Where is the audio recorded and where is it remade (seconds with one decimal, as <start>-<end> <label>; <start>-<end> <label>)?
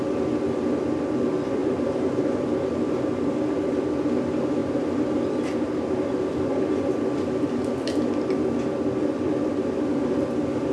0.0-1.6 recorded; 1.6-2.5 remade; 2.5-10.7 recorded